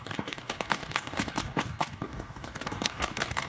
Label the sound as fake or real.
fake